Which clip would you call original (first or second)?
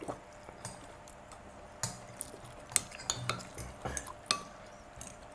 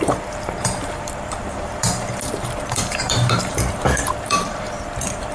first